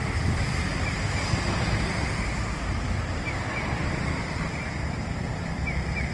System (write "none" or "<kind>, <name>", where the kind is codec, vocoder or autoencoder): vocoder, BigVGAN v2